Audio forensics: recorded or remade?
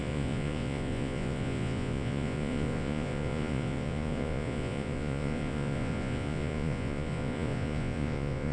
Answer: remade